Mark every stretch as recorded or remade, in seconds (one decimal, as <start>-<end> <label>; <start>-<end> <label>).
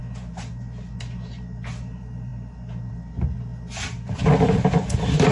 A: 0.0-5.3 recorded